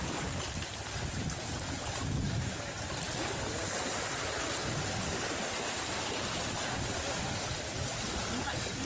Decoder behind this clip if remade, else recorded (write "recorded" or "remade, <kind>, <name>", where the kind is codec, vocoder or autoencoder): recorded